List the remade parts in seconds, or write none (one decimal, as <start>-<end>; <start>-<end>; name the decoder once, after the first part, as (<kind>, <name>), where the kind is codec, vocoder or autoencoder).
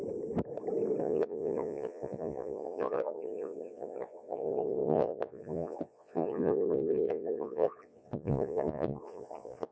1.0-9.7 (vocoder, Vocos)